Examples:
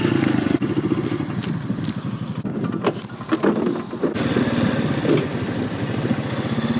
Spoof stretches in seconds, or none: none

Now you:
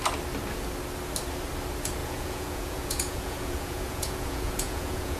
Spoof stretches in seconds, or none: 2.0-5.2 (vocoder, Vocos)

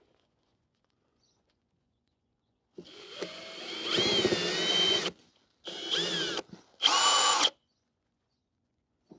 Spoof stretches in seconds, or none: 0.0-3.4 (vocoder, Vocos); 4.7-5.4; 7.1-9.2

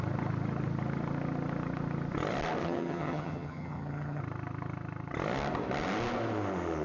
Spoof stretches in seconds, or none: 2.6-4.2 (vocoder, HiFi-GAN)

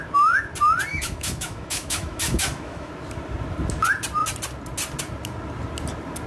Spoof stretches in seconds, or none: 0.9-2.9 (autoencoder, DAC-VAE)

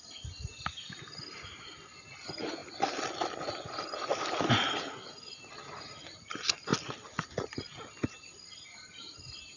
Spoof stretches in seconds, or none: none

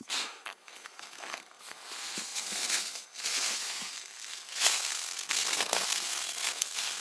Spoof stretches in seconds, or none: 0.0-7.0 (codec, SNAC)